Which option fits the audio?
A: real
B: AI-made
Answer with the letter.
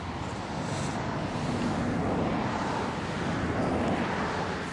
A